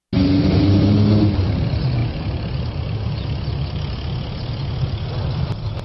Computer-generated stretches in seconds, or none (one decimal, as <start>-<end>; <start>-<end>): none